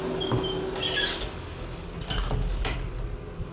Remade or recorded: recorded